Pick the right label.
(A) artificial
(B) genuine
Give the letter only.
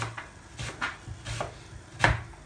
B